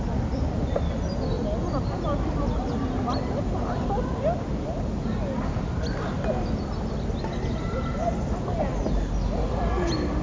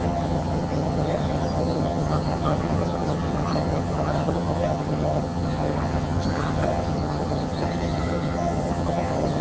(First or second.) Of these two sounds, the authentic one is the first